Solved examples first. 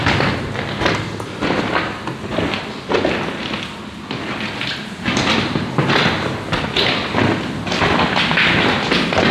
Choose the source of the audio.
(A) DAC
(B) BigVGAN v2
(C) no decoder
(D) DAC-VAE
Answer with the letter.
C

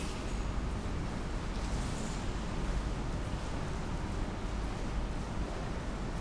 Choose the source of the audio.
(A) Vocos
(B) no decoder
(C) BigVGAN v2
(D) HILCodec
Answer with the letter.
B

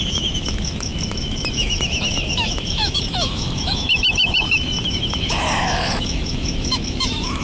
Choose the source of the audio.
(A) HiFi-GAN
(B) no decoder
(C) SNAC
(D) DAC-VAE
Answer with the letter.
D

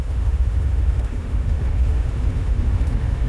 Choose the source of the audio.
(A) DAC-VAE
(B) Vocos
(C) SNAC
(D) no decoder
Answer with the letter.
A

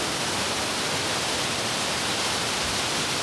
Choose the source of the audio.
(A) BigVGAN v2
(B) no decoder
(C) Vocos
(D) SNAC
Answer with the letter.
B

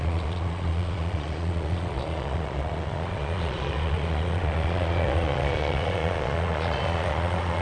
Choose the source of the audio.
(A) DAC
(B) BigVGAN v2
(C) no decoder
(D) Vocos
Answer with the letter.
D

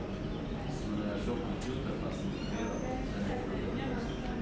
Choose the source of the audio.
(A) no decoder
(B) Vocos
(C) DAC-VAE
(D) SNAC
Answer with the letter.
A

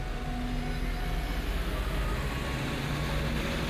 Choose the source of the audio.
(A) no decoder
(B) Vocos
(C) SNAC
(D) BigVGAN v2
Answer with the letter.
A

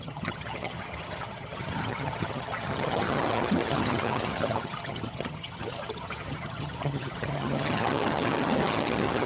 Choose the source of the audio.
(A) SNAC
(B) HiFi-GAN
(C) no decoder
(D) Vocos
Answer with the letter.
B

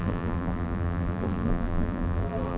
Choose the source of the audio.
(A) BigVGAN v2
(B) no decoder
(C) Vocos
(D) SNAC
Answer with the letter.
A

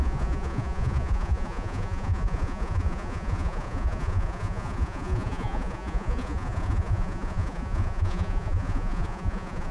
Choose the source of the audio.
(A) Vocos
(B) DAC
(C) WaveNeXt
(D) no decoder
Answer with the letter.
A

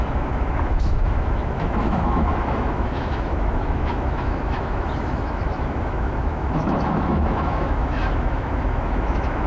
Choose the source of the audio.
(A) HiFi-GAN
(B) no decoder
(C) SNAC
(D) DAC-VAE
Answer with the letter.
D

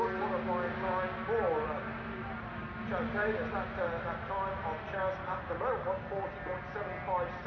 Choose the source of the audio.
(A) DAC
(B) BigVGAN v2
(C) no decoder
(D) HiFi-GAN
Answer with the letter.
C